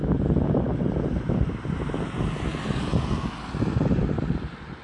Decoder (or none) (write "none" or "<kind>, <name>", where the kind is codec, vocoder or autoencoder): none